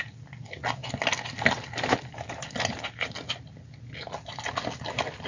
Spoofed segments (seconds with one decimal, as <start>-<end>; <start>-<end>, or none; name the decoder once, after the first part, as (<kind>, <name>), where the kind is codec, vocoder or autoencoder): none